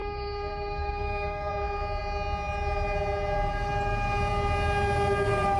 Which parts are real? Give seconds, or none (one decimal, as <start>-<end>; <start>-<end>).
1.5-5.6

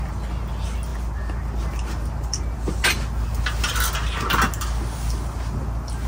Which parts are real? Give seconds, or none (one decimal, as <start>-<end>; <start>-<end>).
0.0-6.1

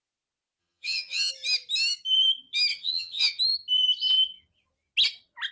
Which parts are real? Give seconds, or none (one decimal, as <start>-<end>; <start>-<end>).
0.0-0.6; 1.3-2.7; 3.4-5.5

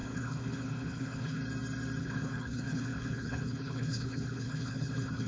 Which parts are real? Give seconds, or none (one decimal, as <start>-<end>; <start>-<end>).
1.4-2.0

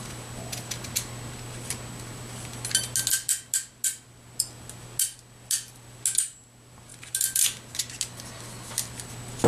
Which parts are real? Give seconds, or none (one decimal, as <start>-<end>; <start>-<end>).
0.0-9.5